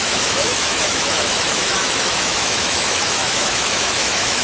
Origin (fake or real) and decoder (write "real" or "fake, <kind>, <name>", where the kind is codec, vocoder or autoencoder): fake, autoencoder, DAC-VAE